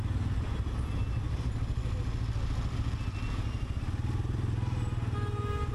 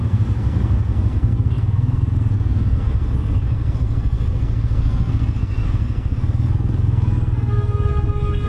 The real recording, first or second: first